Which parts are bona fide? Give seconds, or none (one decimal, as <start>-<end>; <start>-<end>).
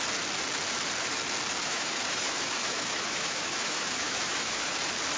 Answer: 0.0-1.6; 4.7-5.2